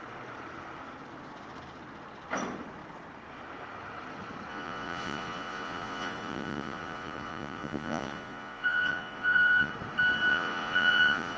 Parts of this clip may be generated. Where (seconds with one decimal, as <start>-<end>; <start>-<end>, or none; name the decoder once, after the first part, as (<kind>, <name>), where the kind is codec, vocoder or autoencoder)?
4.5-9.7 (vocoder, Vocos); 10.3-11.4